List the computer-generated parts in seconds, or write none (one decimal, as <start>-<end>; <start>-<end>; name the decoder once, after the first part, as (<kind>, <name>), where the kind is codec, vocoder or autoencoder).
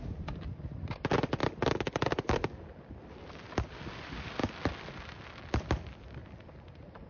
0.0-4.4 (vocoder, BigVGAN v2); 4.9-7.1